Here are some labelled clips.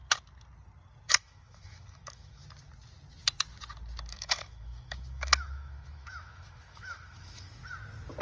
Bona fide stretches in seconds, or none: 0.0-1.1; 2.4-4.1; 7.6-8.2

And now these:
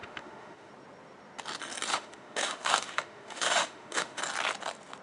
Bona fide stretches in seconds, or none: 0.7-1.9; 4.2-5.0

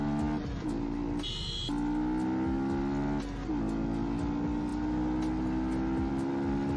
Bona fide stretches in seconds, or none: 0.0-6.8

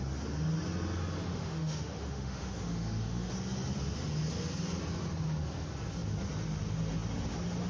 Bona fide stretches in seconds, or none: 0.0-1.3; 3.3-7.7

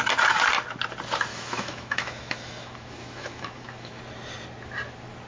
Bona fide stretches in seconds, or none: 0.0-1.3; 4.0-5.3

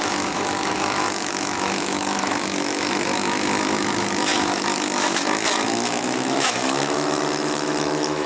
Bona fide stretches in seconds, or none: none

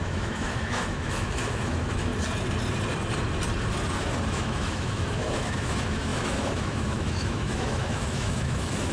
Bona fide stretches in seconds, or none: 2.1-4.3